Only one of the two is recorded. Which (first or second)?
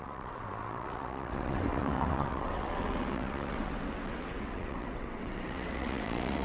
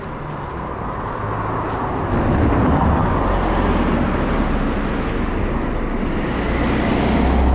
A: second